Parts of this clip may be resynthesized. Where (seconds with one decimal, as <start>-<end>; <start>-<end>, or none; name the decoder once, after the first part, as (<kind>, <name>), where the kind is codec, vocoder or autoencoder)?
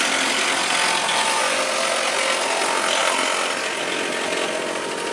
1.1-1.6 (vocoder, Vocos)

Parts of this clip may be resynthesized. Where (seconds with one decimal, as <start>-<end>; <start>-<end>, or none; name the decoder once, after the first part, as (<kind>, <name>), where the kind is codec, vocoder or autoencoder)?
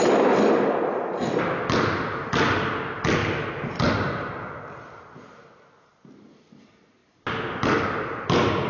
none